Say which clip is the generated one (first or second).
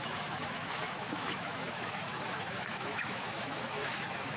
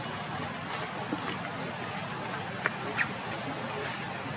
first